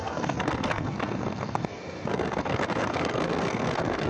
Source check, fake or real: fake